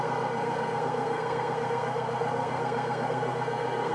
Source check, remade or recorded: remade